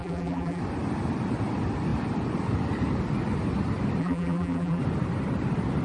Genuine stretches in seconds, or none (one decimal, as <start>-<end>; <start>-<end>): 0.6-4.0; 4.8-5.8